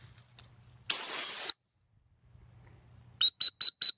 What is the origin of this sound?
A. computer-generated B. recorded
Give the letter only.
B